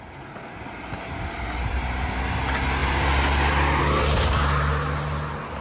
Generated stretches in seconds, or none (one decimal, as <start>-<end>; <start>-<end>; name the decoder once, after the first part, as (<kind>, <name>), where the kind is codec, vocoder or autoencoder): none